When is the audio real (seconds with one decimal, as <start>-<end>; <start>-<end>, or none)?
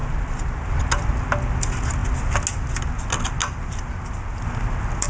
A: 0.0-5.1